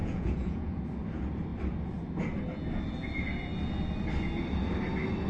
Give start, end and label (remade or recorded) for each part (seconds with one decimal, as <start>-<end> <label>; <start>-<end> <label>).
0.0-0.9 remade; 0.9-5.3 recorded